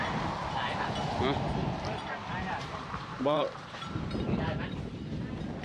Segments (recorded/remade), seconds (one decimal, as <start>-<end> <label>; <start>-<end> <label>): 0.0-1.6 recorded; 1.6-5.0 remade; 5.0-5.6 recorded